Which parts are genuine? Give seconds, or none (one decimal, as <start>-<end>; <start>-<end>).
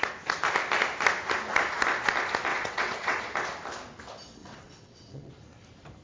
0.0-2.5; 3.2-4.4; 5.3-6.0